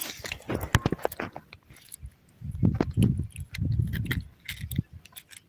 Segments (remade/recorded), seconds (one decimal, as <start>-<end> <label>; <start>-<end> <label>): 0.0-5.5 recorded